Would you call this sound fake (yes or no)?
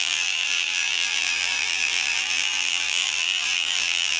yes